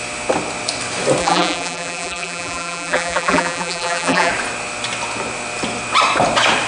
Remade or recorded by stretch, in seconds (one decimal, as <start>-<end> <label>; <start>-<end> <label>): 0.0-1.2 recorded; 1.2-4.3 remade; 4.3-6.7 recorded